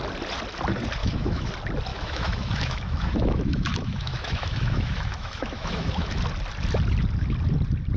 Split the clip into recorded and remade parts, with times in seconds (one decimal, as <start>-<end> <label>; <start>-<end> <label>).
0.0-1.0 recorded; 1.0-1.5 remade; 1.5-1.9 recorded; 1.9-6.2 remade; 6.2-8.0 recorded